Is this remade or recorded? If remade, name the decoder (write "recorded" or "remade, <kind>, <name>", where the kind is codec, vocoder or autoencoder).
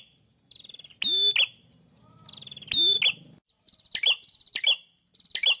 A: recorded